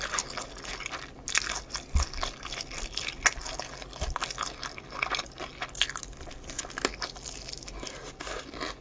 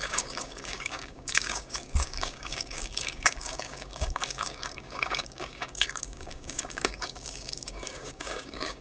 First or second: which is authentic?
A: first